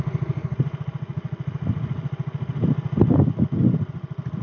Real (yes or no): yes